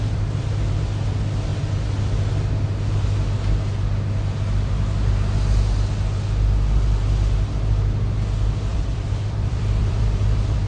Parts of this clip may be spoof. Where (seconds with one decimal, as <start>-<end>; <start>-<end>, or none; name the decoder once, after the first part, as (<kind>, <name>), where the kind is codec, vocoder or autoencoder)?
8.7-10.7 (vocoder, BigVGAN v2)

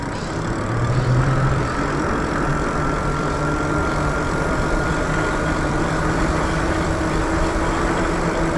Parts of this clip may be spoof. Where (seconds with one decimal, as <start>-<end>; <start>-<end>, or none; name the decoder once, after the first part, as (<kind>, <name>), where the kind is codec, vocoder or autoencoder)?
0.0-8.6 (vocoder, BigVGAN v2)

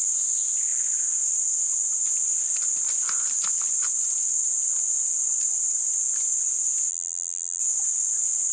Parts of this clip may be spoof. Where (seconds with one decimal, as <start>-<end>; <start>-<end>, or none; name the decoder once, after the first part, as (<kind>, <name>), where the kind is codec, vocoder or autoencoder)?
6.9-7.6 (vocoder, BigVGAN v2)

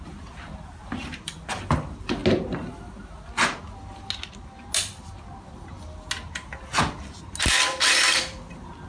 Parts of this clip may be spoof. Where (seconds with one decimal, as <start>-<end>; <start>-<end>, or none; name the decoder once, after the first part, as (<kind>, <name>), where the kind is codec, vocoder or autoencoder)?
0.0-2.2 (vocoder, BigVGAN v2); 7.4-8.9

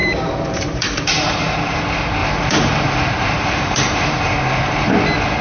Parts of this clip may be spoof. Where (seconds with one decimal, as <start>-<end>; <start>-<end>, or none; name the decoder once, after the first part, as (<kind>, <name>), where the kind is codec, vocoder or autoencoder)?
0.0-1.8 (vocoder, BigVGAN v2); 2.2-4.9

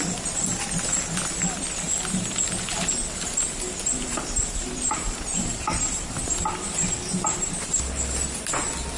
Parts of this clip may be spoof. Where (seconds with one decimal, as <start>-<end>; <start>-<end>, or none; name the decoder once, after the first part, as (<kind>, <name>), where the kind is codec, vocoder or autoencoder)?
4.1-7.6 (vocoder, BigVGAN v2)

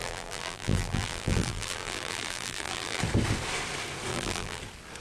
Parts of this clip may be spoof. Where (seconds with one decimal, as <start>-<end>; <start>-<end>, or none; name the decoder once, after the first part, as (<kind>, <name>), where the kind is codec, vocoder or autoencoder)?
0.0-3.0 (vocoder, BigVGAN v2); 4.1-4.6

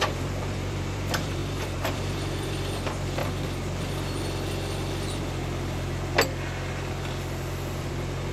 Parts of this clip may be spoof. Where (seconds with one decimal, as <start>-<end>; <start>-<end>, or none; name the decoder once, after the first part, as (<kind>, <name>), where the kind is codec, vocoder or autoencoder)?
0.0-3.2 (vocoder, BigVGAN v2); 7.8-8.3